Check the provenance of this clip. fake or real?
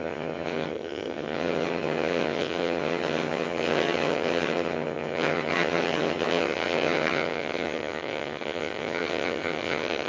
fake